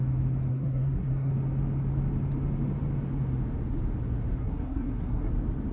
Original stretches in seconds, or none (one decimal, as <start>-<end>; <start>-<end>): 0.0-0.5; 1.3-4.4; 5.3-5.7